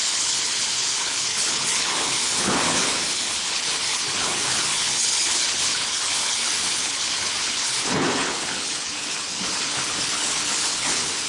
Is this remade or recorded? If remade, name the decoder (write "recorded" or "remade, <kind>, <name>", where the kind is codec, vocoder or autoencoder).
remade, codec, HILCodec